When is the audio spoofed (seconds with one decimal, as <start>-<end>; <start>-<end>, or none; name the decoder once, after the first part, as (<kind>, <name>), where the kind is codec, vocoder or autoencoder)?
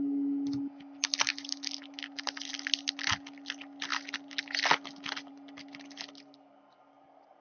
none